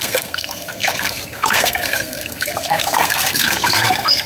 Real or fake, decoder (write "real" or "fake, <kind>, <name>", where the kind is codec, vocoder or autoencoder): fake, codec, SNAC